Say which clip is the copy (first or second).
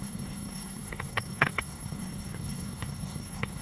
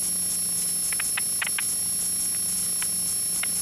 first